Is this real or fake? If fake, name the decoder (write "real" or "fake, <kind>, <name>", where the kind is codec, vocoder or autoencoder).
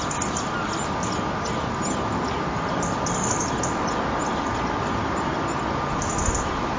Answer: real